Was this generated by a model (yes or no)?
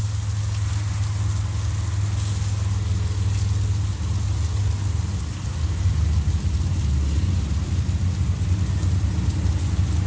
no